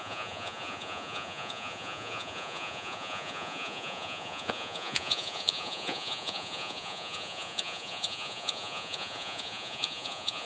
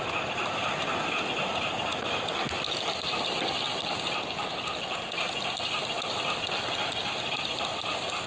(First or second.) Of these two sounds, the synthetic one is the first